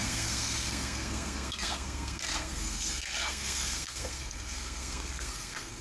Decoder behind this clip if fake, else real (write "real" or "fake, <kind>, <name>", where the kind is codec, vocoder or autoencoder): fake, codec, SNAC